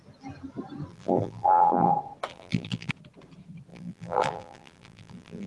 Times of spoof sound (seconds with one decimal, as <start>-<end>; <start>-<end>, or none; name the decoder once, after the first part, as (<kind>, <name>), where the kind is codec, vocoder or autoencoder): 0.9-1.9 (vocoder, BigVGAN v2); 2.3-2.9; 3.7-5.5